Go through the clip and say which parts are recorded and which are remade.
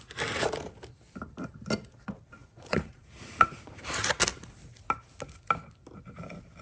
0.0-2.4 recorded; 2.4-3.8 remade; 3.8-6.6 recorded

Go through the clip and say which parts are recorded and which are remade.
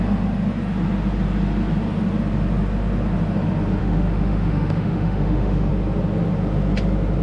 0.0-3.8 recorded; 3.8-5.7 remade; 5.7-7.2 recorded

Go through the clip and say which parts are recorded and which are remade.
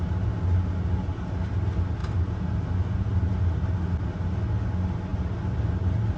0.0-2.0 recorded; 2.0-3.4 remade; 3.4-5.1 recorded; 5.1-5.8 remade; 5.8-6.2 recorded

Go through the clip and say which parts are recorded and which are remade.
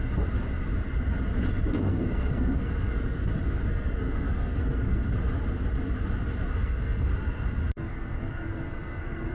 0.0-1.7 recorded; 1.7-3.2 remade; 3.2-3.7 recorded; 3.7-5.1 remade; 5.1-6.5 recorded; 6.5-7.1 remade; 7.1-7.7 recorded; 7.7-9.3 remade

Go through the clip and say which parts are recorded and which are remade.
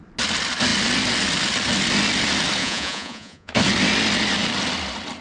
0.0-2.6 recorded; 2.6-3.5 remade; 3.5-5.2 recorded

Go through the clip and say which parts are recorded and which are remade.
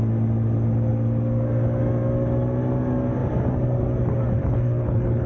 0.0-4.4 recorded; 4.4-5.3 remade